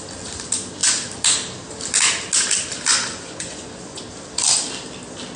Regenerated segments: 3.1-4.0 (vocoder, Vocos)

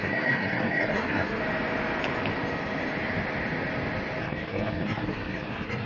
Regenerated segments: 0.0-1.4 (codec, SNAC); 4.2-5.9

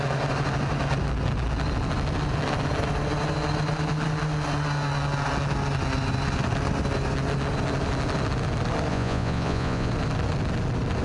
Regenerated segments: 8.9-9.9 (vocoder, Vocos)

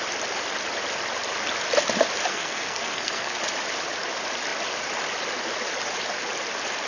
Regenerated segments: 2.3-3.4 (codec, SNAC)

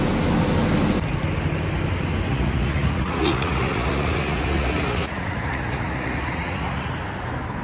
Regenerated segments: 2.3-6.9 (vocoder, Vocos)